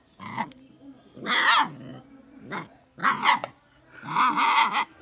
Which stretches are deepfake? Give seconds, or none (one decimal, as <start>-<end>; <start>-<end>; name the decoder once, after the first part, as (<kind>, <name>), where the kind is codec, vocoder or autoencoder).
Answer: 3.0-3.6 (vocoder, Vocos)

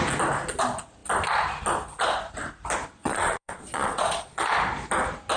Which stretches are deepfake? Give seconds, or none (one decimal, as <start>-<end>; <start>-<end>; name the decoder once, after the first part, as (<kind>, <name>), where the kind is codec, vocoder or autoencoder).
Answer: 3.0-4.4 (vocoder, Vocos)

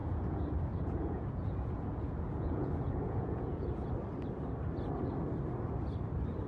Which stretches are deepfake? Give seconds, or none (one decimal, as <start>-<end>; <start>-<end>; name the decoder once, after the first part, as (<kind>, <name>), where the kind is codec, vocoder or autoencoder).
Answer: 0.0-3.9 (vocoder, Vocos)

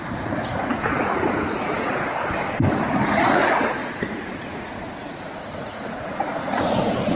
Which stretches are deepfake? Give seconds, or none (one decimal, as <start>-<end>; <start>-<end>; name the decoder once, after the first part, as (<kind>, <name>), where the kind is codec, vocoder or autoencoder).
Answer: 0.0-2.1 (vocoder, Vocos); 2.7-7.2

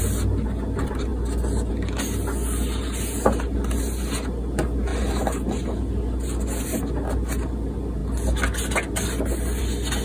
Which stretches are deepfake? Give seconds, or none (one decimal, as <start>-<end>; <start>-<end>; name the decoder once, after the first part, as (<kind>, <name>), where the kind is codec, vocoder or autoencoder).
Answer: none

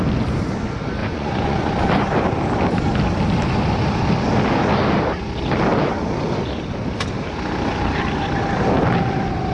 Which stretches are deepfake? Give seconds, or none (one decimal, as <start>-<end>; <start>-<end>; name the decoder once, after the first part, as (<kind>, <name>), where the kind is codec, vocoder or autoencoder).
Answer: 1.0-1.7 (vocoder, Vocos)

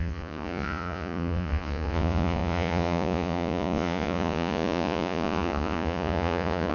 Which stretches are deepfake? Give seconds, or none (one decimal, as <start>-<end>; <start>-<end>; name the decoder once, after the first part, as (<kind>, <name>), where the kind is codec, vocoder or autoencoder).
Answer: 0.0-6.7 (vocoder, Vocos)